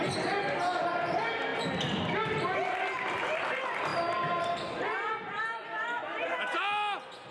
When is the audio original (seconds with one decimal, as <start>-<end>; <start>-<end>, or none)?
0.0-7.3